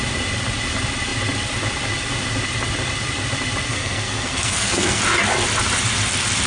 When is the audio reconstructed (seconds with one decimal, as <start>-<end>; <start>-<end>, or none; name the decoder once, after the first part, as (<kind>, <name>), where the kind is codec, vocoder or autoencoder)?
3.7-5.0 (codec, SNAC)